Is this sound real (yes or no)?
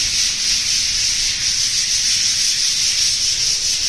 yes